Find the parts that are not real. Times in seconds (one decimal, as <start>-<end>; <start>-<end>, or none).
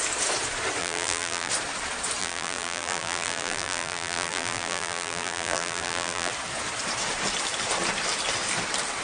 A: 0.8-1.5; 2.2-6.3